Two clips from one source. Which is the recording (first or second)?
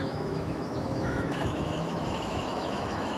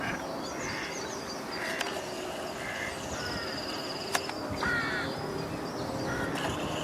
second